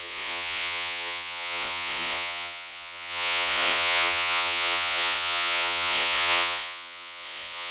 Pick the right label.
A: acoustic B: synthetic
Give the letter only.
B